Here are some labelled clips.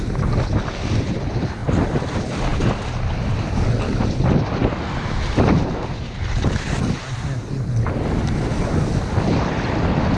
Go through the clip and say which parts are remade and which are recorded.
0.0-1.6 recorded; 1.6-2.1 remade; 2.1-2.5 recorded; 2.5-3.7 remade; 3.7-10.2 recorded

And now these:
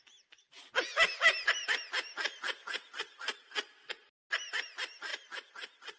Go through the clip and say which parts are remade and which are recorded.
0.0-6.0 recorded

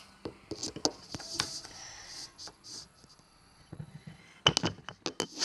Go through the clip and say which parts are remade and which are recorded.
0.0-1.0 recorded; 1.0-4.2 remade; 4.2-5.4 recorded

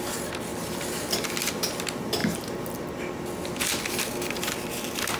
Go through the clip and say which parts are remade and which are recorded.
0.0-5.2 recorded

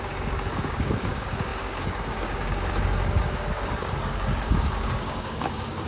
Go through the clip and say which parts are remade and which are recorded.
0.0-5.9 remade

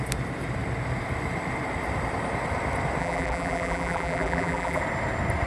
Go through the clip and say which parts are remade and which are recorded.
0.0-3.0 recorded; 3.0-4.8 remade; 4.8-5.5 recorded

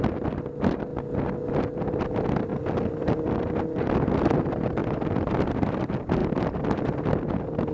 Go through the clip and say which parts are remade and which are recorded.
0.0-2.5 recorded; 2.5-3.1 remade; 3.1-4.8 recorded; 4.8-5.5 remade; 5.5-6.2 recorded; 6.2-6.8 remade; 6.8-7.7 recorded